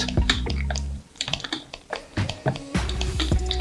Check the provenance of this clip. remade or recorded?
remade